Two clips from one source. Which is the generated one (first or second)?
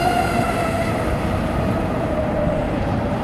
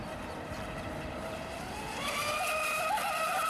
first